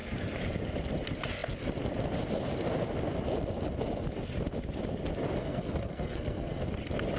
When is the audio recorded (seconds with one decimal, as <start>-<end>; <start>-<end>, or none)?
0.0-5.4; 6.6-7.2